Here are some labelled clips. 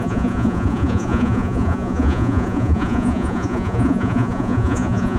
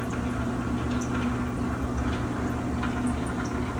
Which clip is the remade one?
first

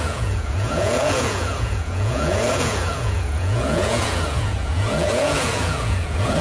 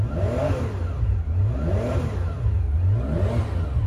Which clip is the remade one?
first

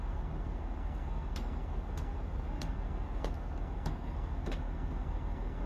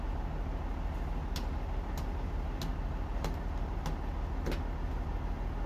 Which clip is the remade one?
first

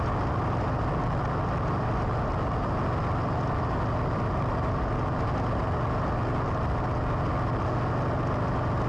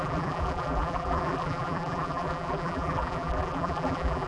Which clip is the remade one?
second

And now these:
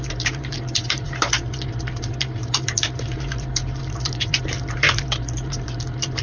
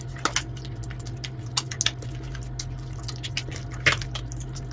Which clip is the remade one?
first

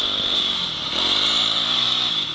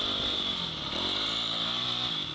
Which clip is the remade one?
first